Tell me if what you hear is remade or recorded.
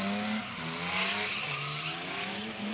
recorded